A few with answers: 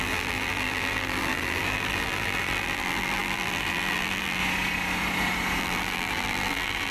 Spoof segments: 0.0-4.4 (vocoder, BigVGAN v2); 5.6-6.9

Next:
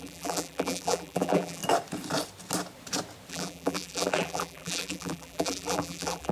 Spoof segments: 0.0-1.6 (vocoder, BigVGAN v2); 3.3-6.3

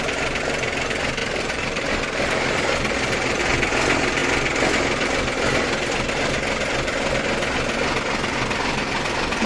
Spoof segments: 1.2-3.4 (vocoder, BigVGAN v2)

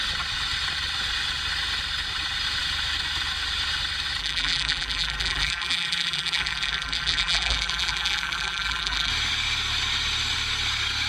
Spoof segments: 4.2-9.1 (vocoder, BigVGAN v2)

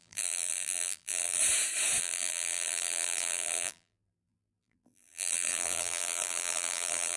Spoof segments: 0.0-1.4 (vocoder, BigVGAN v2); 2.0-7.2

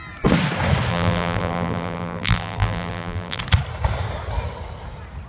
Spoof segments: 0.9-3.4 (vocoder, BigVGAN v2)

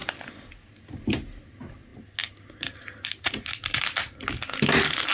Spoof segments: none

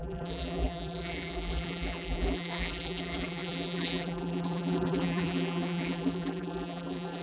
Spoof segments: 0.0-7.2 (vocoder, BigVGAN v2)